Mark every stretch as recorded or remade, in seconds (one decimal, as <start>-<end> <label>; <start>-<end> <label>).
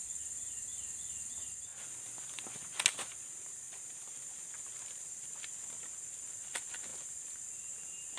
0.0-8.2 recorded